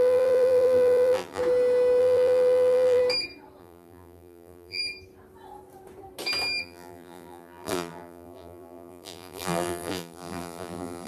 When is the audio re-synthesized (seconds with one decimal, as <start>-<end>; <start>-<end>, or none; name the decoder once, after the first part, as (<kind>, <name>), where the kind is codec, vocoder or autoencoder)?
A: 0.0-1.4 (vocoder, BigVGAN v2); 2.0-3.0; 3.6-4.8; 6.6-11.1